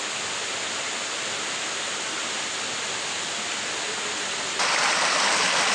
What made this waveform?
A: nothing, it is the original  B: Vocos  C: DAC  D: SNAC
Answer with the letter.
A